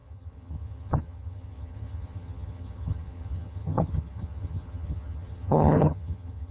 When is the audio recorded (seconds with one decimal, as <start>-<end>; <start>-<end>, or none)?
none